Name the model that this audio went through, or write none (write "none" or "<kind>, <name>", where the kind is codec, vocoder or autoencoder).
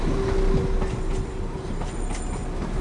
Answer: none